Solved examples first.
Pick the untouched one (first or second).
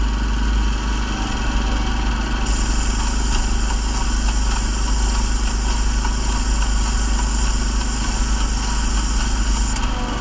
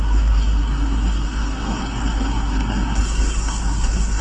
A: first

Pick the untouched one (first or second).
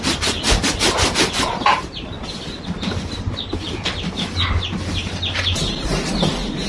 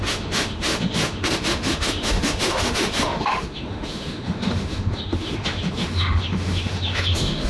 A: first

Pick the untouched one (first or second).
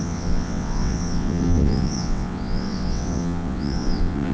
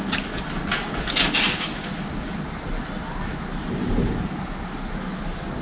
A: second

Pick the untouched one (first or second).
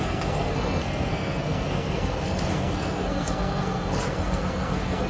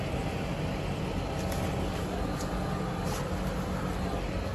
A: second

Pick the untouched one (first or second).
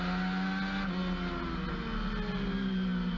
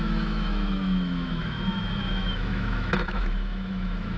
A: first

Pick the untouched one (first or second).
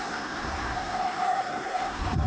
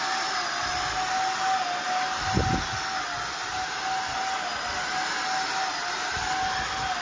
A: second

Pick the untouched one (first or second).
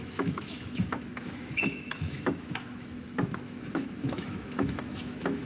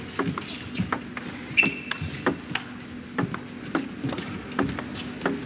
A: second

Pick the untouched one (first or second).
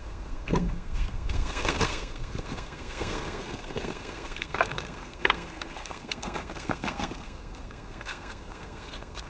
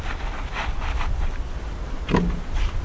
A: second